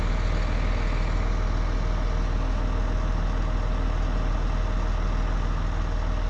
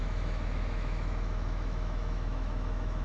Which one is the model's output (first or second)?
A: second